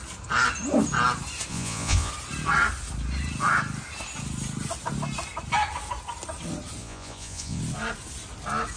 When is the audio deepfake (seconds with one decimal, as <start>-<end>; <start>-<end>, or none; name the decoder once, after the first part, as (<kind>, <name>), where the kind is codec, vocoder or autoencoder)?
1.5-2.1 (vocoder, Vocos); 6.8-7.6